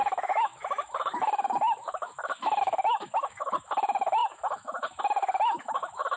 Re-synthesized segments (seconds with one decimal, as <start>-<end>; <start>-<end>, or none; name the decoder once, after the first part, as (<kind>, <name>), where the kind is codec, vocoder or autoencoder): 0.0-6.2 (autoencoder, DAC-VAE)